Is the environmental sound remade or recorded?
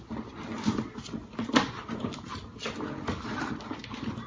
recorded